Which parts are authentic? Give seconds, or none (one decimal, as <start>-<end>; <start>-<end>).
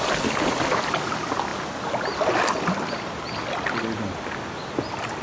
0.0-5.2